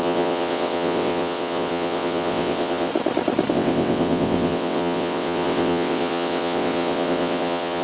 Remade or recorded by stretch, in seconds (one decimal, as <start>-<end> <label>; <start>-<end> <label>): 0.0-2.9 remade; 2.9-3.5 recorded; 3.5-7.8 remade